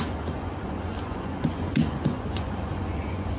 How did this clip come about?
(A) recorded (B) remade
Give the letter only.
B